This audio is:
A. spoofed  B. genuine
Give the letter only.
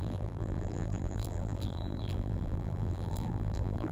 A